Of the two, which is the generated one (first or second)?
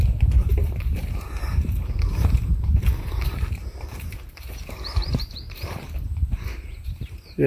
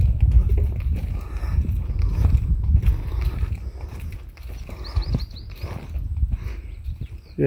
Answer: first